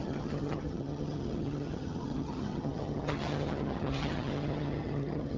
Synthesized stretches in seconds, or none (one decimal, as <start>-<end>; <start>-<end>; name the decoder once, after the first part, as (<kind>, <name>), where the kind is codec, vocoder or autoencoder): 0.0-5.4 (vocoder, HiFi-GAN)